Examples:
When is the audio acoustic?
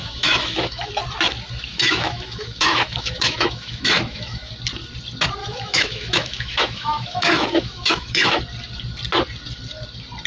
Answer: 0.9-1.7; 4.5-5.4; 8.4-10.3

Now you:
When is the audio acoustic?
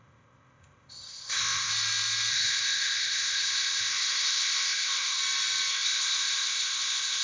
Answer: 1.7-2.3; 5.2-5.7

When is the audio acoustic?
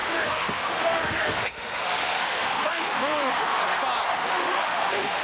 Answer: 3.6-4.1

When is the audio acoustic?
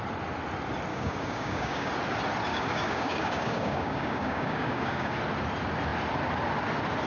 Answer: 0.0-0.9; 1.9-2.5; 5.2-7.1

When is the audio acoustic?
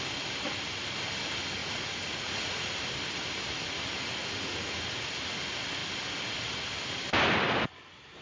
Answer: 0.0-1.6; 2.7-4.2; 5.0-8.2